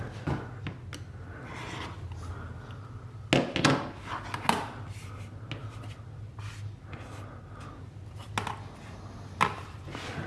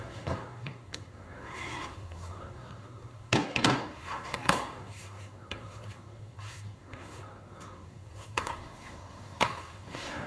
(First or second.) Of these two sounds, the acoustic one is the first